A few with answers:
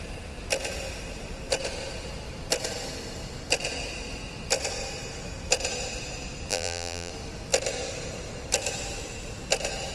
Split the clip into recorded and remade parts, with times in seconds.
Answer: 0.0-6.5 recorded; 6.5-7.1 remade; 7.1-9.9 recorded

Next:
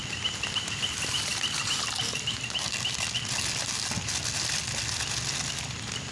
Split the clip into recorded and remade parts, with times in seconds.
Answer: 0.0-6.1 recorded

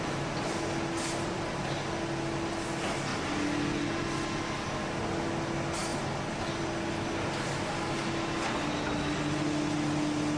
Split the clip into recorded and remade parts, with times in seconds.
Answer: 0.0-10.4 recorded

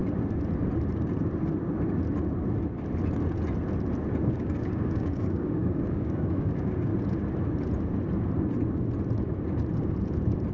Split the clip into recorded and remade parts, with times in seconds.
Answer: 0.0-4.2 recorded; 4.2-6.9 remade; 6.9-10.5 recorded